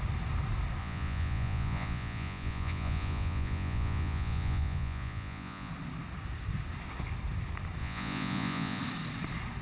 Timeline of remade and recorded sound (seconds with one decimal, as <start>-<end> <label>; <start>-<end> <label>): 0.0-0.8 recorded; 0.8-5.7 remade; 5.7-7.8 recorded; 7.8-8.8 remade; 8.8-9.6 recorded